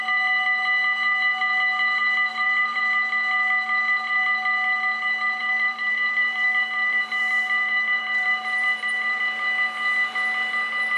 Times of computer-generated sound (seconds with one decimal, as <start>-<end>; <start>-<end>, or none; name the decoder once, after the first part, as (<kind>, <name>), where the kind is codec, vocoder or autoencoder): 2.3-2.8 (vocoder, BigVGAN v2); 5.4-9.2